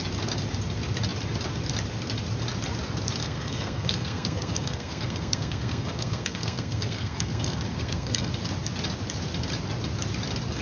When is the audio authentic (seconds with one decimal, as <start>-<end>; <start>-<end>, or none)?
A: 0.0-3.2; 8.3-10.6